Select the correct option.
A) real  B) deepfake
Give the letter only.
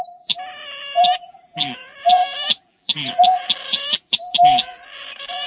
B